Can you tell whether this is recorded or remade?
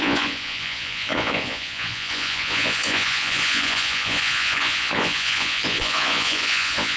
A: remade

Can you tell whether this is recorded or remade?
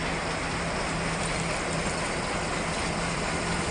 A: recorded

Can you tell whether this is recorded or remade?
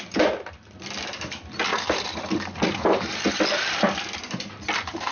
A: recorded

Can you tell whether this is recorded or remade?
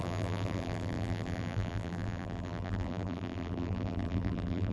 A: remade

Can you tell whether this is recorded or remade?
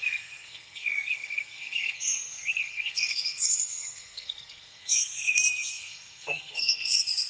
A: remade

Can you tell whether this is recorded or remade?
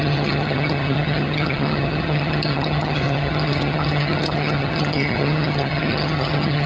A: remade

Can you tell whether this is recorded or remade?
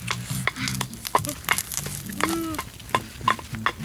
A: recorded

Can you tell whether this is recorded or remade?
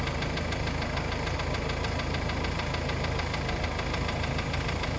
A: recorded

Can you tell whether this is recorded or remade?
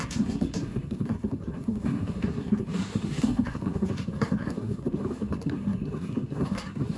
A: remade